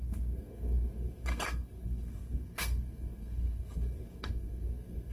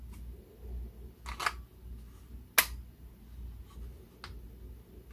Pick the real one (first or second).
second